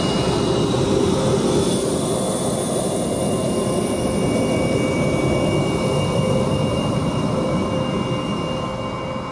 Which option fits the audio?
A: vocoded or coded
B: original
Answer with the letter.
B